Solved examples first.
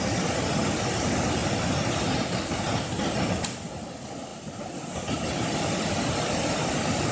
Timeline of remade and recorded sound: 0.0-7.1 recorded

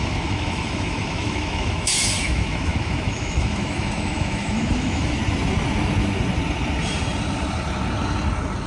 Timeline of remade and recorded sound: 0.0-5.2 remade; 5.2-8.7 recorded

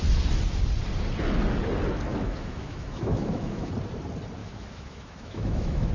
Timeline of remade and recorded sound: 0.0-2.1 recorded; 2.1-3.7 remade; 3.7-4.4 recorded; 4.4-5.9 remade

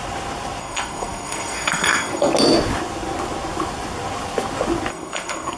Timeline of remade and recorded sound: 0.0-0.6 recorded; 0.6-2.3 remade; 2.3-4.9 recorded; 4.9-5.6 remade

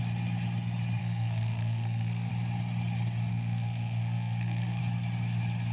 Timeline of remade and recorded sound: 0.0-1.0 recorded; 1.0-2.3 remade; 2.3-3.3 recorded; 3.3-4.8 remade; 4.8-5.7 recorded

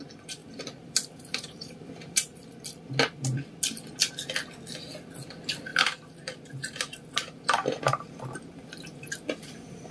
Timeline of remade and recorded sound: 0.0-0.4 recorded; 0.4-2.4 remade; 2.4-5.7 recorded; 5.7-9.9 remade

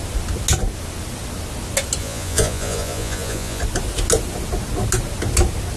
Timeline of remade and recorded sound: 0.0-2.0 recorded; 2.0-3.6 remade; 3.6-5.8 recorded